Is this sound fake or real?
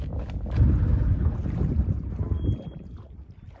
real